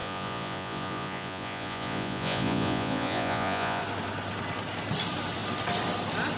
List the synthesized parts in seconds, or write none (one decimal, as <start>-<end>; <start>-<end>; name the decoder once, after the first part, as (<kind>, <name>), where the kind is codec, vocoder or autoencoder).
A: 0.0-3.8 (vocoder, Vocos)